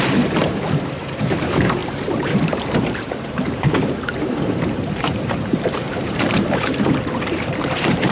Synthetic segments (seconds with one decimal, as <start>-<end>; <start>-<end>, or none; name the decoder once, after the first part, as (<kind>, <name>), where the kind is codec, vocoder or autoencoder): 0.0-8.1 (vocoder, BigVGAN v2)